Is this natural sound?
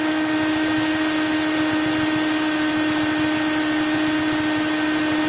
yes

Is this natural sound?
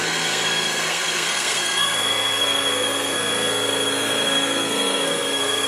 no